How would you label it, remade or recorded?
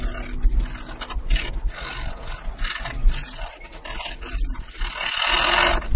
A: recorded